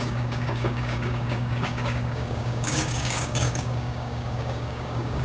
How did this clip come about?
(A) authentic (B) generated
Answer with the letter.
B